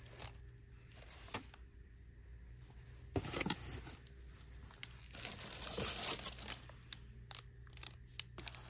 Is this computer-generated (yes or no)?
no